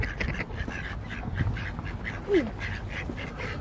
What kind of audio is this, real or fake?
fake